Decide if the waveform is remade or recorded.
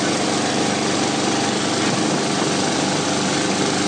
recorded